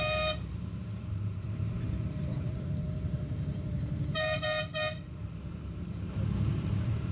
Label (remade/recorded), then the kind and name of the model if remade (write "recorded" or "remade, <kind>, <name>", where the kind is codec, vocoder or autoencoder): remade, vocoder, BigVGAN v2